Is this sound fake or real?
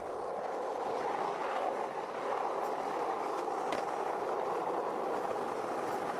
real